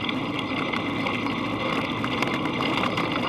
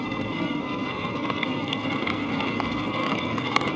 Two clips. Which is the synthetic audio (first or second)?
second